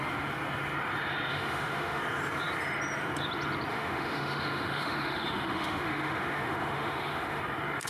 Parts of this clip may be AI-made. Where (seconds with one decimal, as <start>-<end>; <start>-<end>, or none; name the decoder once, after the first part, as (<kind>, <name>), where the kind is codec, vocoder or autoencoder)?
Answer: 1.3-2.0 (autoencoder, DAC-VAE); 3.7-7.4